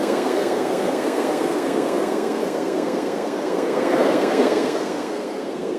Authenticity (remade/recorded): remade